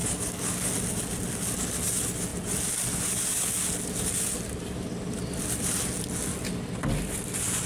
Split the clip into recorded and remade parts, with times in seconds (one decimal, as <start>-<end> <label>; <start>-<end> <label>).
0.0-0.7 remade; 0.7-7.7 recorded